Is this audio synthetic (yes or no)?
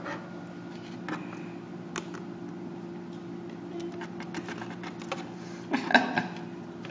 no